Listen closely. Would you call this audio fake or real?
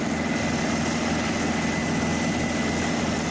real